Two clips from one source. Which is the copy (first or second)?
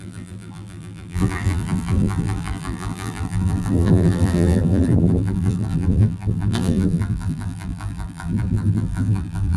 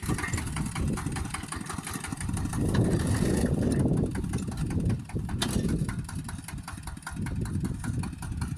first